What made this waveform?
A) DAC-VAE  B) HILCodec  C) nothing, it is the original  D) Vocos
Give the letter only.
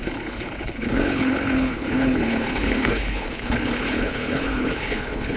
B